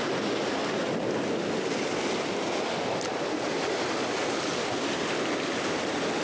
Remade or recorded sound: recorded